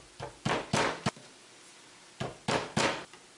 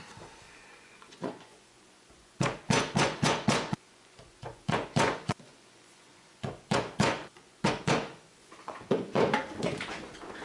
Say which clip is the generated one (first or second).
second